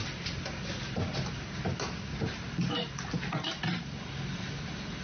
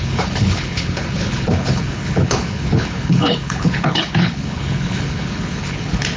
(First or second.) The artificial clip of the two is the second